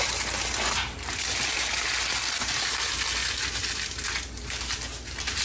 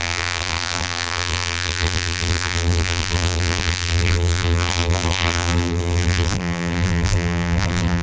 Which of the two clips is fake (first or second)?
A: second